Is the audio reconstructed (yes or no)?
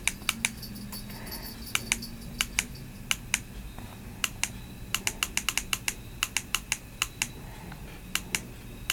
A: no